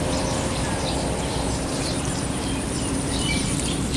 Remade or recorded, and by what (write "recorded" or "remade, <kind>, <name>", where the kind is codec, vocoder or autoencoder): remade, vocoder, BigVGAN v2